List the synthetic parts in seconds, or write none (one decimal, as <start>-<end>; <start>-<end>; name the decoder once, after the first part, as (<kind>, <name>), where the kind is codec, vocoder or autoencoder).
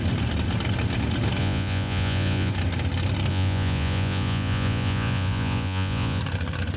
1.4-2.5 (vocoder, Vocos); 3.3-6.2